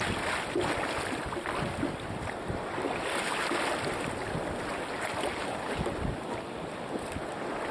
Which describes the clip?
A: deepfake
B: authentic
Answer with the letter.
B